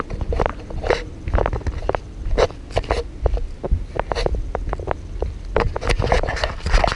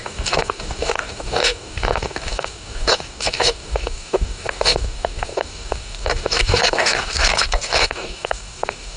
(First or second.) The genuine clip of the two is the first